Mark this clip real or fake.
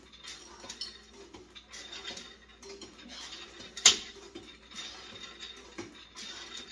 real